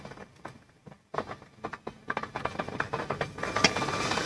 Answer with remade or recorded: recorded